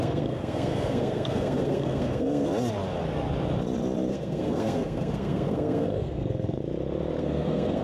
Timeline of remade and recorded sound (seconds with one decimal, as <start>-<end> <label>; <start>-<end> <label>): 0.0-2.5 remade; 2.5-4.1 recorded; 4.1-6.6 remade; 6.6-7.2 recorded; 7.2-7.8 remade

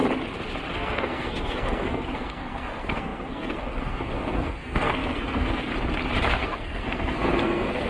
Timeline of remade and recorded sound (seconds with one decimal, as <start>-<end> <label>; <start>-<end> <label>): 0.0-0.7 recorded; 0.7-5.7 remade; 5.7-6.3 recorded; 6.3-7.9 remade

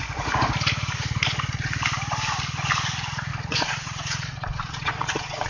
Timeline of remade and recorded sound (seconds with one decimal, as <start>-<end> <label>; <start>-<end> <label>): 0.0-3.3 recorded; 3.3-5.5 remade